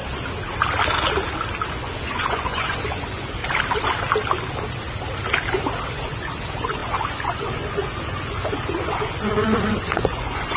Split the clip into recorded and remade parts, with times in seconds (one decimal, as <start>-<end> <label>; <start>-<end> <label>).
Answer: 0.0-1.7 recorded; 1.7-3.4 remade; 3.4-5.9 recorded; 5.9-10.6 remade